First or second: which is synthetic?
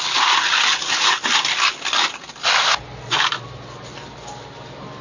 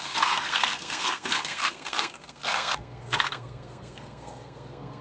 second